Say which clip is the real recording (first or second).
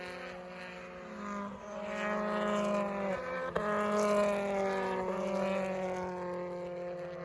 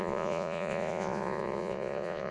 first